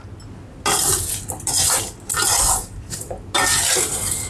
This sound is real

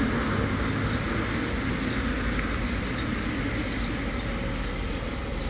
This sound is real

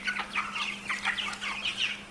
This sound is real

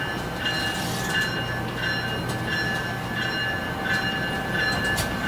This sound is real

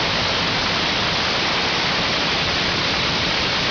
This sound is real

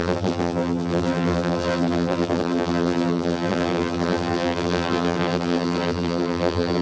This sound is fake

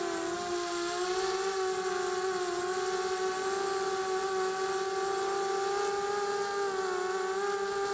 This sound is real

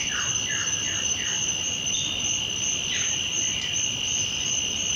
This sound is real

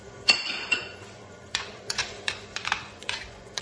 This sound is fake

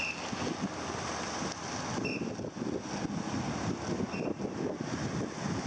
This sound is real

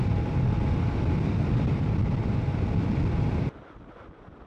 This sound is real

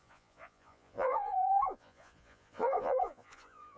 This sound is fake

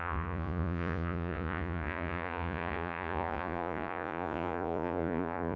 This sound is fake